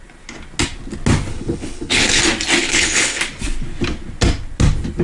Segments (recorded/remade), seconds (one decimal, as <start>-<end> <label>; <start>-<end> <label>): 0.0-1.3 recorded; 1.3-2.2 remade; 2.2-2.6 recorded; 2.6-3.2 remade; 3.2-5.0 recorded